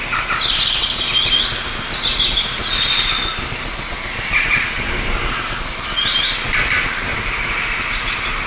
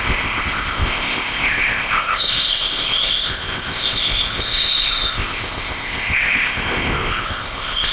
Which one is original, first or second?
first